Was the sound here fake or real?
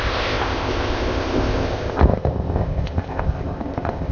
fake